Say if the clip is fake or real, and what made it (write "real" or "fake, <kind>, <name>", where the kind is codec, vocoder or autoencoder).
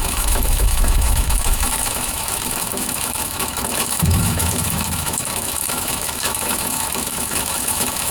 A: fake, autoencoder, DAC-VAE